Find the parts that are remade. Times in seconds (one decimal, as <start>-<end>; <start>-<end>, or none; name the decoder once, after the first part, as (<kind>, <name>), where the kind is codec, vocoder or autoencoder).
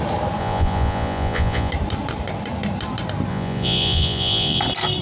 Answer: 0.4-1.7 (vocoder, Vocos); 3.3-4.6